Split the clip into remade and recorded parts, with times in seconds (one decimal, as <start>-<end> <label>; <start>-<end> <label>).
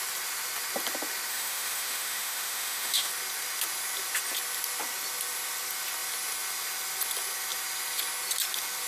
0.0-1.3 recorded; 1.3-3.1 remade; 3.1-8.9 recorded